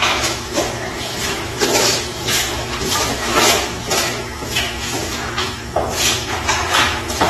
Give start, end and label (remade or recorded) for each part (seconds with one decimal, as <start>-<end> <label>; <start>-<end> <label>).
0.0-7.3 remade